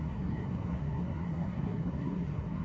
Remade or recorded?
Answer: remade